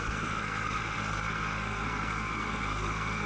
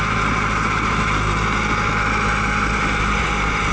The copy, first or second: first